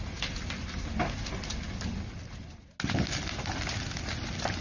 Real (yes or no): yes